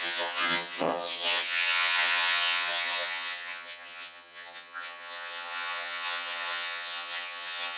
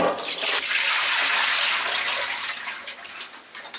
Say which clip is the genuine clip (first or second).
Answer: second